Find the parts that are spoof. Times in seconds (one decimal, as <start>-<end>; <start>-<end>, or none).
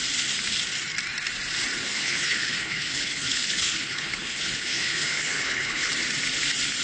1.8-5.9